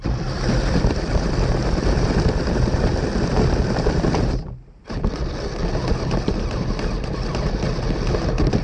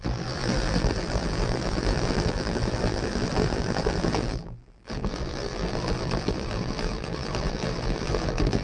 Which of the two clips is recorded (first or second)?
first